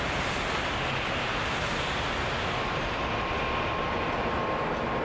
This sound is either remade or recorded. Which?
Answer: recorded